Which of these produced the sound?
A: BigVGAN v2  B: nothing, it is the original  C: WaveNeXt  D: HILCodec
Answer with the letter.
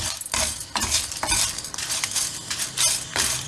A